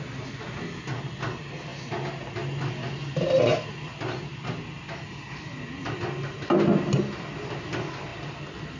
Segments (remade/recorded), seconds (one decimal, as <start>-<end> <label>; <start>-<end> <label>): 0.0-8.8 recorded